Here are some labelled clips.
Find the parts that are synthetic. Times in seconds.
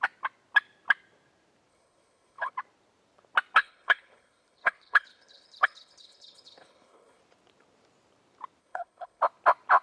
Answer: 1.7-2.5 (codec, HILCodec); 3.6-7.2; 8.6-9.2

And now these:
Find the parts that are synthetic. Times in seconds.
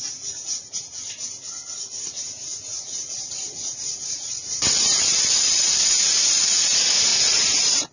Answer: 2.5-5.8 (vocoder, BigVGAN v2); 7.1-7.9